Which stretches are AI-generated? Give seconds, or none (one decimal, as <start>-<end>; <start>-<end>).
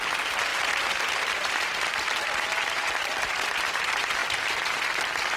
0.5-3.7; 4.2-4.9